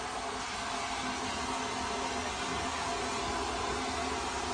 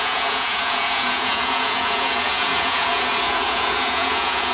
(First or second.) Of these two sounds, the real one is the first